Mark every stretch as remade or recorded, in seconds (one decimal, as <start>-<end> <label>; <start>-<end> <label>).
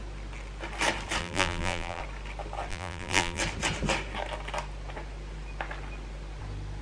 0.0-1.2 recorded; 1.2-2.0 remade; 2.0-2.7 recorded; 2.7-3.4 remade; 3.4-6.8 recorded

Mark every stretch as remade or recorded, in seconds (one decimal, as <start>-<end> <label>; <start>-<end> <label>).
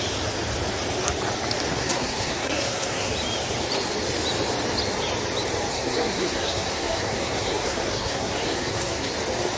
0.0-1.7 recorded; 1.7-3.1 remade; 3.1-5.7 recorded; 5.7-9.1 remade; 9.1-9.6 recorded